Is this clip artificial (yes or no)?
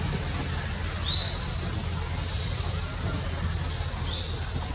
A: no